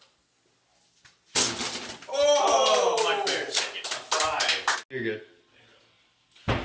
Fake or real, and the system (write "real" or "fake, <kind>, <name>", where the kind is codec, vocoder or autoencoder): real